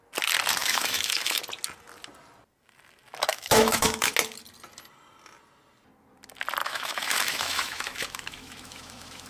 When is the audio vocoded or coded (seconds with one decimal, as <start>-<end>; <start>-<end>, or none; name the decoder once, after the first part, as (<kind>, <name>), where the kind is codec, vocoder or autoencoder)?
0.6-1.4 (autoencoder, DAC-VAE); 3.3-4.1; 6.6-9.3